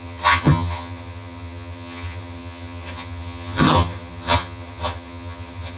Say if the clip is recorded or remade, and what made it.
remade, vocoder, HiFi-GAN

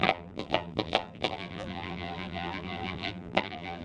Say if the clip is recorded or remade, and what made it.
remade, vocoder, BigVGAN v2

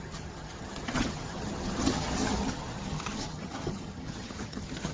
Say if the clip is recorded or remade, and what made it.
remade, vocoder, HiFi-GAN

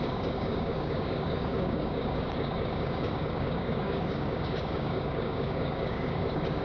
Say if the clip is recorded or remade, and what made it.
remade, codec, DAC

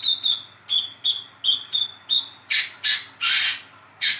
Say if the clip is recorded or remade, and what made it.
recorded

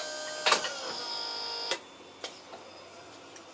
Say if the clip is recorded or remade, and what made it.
recorded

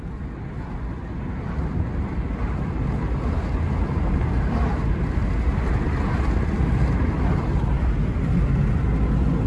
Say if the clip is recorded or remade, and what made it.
recorded